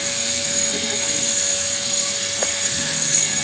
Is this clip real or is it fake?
fake